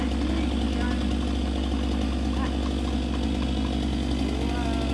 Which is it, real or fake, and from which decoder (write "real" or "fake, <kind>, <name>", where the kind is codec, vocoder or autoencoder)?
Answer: real